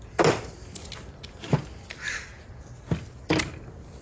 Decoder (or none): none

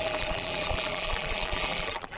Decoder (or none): vocoder, BigVGAN v2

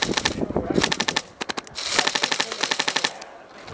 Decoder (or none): none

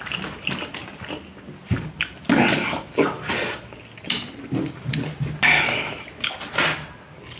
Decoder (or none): none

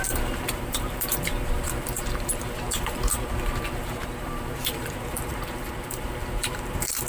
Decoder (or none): vocoder, BigVGAN v2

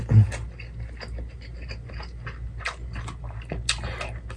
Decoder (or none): none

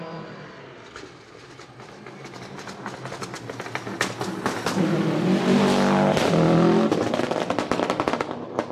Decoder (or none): none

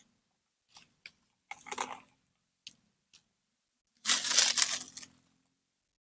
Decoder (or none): none